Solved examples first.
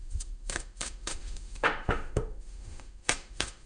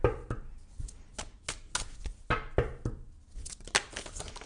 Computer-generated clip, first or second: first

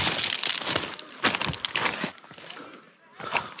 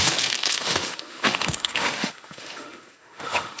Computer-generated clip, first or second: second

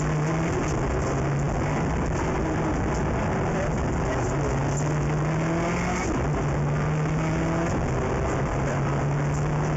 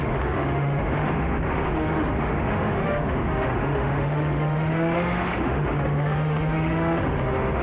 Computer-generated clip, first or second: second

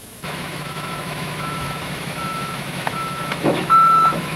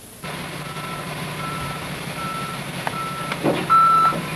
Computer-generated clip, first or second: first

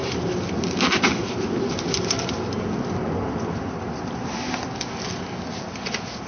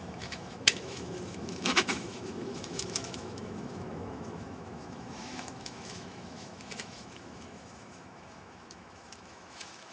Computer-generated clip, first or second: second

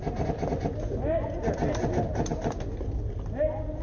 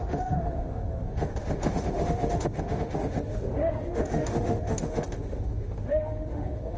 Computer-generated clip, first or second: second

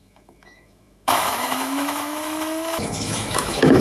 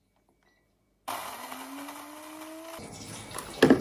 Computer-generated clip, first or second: first